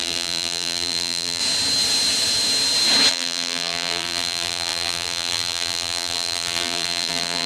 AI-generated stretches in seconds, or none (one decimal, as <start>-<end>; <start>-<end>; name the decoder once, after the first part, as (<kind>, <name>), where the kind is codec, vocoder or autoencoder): 0.0-1.4 (vocoder, BigVGAN v2); 3.1-7.5